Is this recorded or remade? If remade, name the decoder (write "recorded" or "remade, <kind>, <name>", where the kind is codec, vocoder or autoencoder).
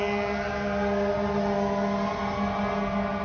recorded